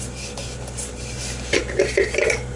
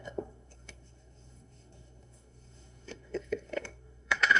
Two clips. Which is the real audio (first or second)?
first